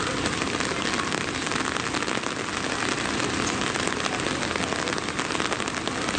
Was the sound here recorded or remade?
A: recorded